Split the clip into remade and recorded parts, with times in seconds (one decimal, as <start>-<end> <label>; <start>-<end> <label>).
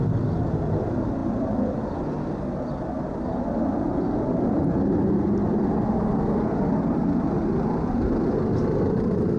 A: 0.0-9.4 recorded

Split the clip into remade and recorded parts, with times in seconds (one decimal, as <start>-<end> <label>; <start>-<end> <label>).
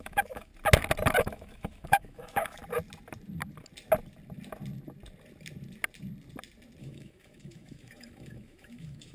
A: 0.0-0.5 remade; 0.5-1.2 recorded; 1.2-2.6 remade; 2.6-6.8 recorded; 6.8-9.1 remade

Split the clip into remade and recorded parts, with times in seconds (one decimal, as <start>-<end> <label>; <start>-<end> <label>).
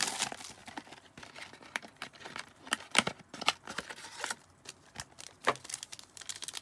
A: 0.0-0.6 recorded; 0.6-4.6 remade; 4.6-6.6 recorded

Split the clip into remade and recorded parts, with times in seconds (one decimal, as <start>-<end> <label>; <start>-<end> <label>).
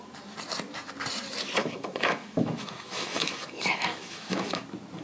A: 0.0-1.6 recorded; 1.6-4.6 remade; 4.6-5.0 recorded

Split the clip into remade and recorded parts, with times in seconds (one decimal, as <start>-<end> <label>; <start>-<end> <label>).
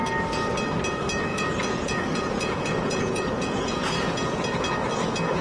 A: 0.0-1.3 recorded; 1.3-4.5 remade; 4.5-5.4 recorded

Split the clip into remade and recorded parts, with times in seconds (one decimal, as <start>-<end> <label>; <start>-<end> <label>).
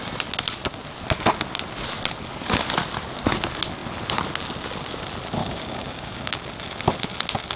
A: 0.0-5.4 recorded; 5.4-6.4 remade; 6.4-7.6 recorded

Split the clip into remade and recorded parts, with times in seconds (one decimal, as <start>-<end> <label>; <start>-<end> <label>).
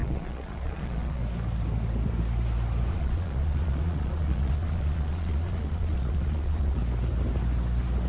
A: 0.0-1.2 remade; 1.2-2.9 recorded; 2.9-6.8 remade; 6.8-8.1 recorded